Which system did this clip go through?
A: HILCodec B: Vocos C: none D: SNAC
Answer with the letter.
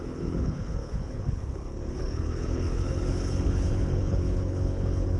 A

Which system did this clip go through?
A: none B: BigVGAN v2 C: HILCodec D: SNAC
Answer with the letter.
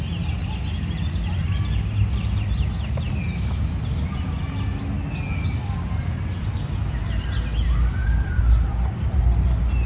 A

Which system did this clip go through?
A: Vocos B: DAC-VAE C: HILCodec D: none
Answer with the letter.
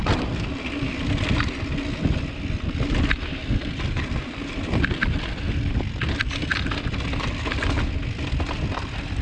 D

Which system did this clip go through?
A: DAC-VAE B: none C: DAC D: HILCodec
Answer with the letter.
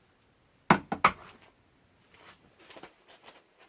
B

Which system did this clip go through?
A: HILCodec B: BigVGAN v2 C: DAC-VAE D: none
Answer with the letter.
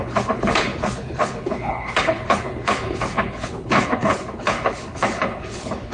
A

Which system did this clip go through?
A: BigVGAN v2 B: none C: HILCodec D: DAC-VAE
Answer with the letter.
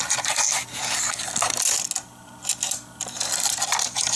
B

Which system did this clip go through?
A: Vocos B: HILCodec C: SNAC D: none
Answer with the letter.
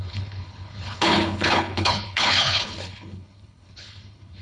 B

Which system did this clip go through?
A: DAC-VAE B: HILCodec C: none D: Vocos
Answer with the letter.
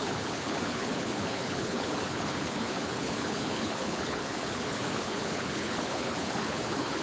B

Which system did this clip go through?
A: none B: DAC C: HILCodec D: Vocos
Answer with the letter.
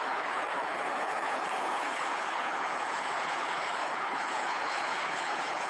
C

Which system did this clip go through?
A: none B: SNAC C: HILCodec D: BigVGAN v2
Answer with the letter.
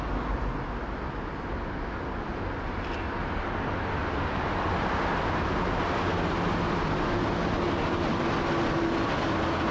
A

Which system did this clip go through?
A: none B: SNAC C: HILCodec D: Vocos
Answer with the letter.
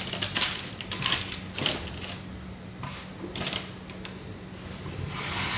A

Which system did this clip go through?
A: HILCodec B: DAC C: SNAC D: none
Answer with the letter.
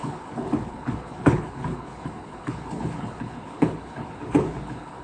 A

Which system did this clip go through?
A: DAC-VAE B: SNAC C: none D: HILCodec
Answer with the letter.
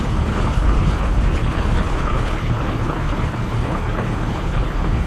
D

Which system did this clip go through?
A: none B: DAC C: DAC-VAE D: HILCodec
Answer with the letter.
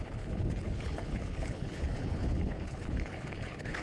D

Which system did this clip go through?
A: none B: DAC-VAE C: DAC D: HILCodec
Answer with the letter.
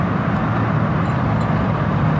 A